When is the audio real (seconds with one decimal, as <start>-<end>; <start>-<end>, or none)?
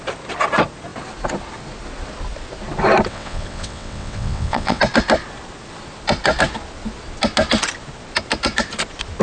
0.0-3.1; 4.8-9.2